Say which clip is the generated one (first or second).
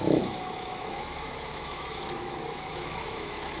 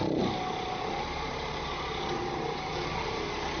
first